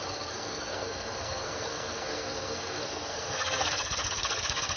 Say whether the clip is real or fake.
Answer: fake